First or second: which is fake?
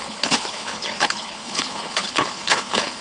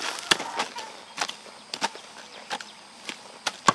first